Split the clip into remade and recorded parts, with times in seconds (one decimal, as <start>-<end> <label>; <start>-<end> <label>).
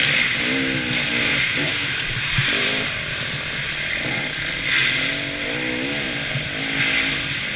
0.0-1.3 recorded; 1.3-3.3 remade; 3.3-7.6 recorded